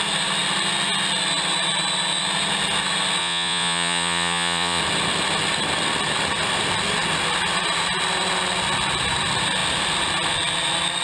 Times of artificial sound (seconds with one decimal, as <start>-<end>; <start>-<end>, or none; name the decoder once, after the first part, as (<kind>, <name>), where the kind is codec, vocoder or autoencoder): 3.2-4.8 (vocoder, Vocos)